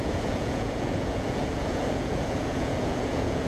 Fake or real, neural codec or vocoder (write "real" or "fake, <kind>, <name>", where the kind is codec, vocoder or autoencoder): fake, vocoder, Vocos